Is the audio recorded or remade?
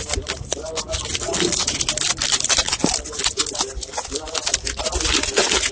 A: recorded